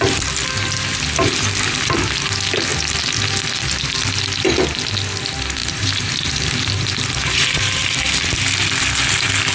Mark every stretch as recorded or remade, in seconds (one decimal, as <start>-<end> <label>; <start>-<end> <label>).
0.0-5.6 recorded; 5.6-7.9 remade; 7.9-9.5 recorded